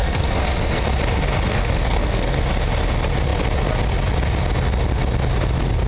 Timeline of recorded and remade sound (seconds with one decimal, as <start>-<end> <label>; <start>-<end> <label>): 0.0-0.8 remade; 0.8-1.5 recorded; 1.5-2.4 remade; 2.4-5.9 recorded